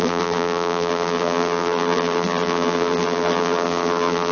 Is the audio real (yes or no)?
no